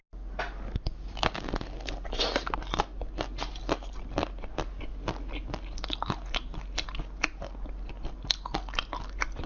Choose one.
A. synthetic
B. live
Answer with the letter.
B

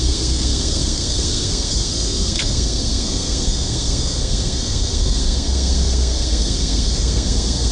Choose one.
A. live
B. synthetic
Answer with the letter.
B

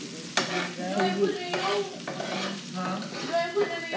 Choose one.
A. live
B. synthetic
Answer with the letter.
A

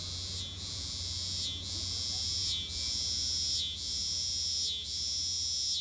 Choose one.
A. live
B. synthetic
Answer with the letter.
A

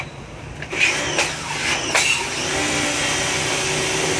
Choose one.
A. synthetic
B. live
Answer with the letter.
B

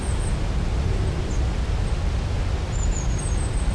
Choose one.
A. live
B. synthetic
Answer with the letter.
A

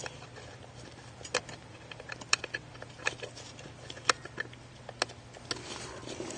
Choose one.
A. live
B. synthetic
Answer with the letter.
A